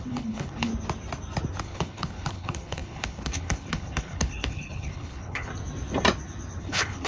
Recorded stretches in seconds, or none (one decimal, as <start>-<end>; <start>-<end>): 0.7-1.6; 5.5-6.6